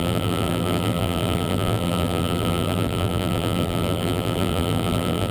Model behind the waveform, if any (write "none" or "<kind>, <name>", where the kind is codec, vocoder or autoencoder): vocoder, BigVGAN v2